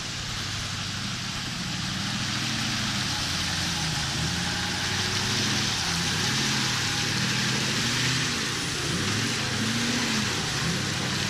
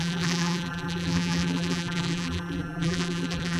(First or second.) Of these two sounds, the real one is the first